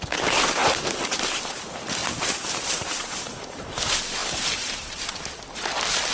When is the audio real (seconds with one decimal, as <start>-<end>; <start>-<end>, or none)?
0.0-0.6; 1.2-2.0; 3.8-4.2; 5.0-6.1